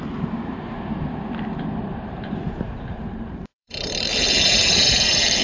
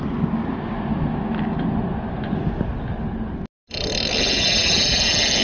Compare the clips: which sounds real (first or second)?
second